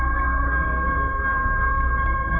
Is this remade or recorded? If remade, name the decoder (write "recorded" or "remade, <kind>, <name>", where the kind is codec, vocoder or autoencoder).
remade, codec, SNAC